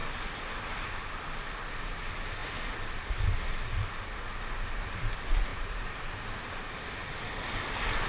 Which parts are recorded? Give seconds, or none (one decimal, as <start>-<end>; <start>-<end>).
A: 0.0-2.4; 4.2-8.1